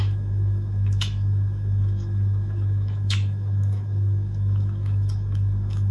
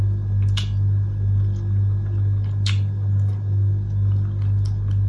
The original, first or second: second